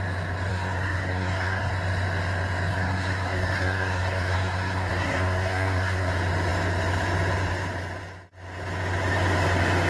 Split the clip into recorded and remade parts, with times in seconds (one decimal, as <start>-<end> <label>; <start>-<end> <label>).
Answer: 0.0-0.5 recorded; 0.5-1.7 remade; 1.7-2.7 recorded; 2.7-6.1 remade; 6.1-9.9 recorded